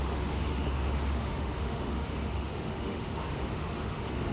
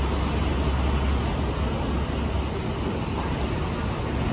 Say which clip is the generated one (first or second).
first